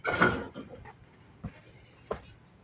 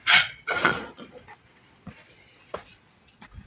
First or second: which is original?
first